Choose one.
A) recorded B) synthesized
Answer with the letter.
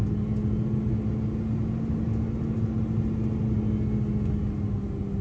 A